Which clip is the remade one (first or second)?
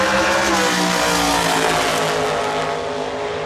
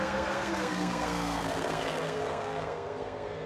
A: second